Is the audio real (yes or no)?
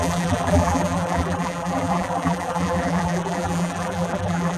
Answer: no